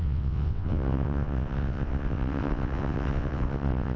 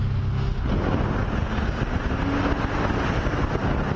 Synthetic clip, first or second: first